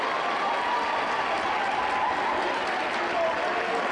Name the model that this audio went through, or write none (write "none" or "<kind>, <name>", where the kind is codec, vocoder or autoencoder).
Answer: none